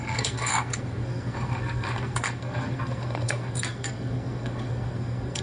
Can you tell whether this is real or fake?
fake